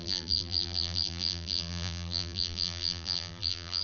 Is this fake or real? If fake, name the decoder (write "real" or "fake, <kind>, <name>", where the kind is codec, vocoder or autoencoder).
fake, vocoder, BigVGAN v2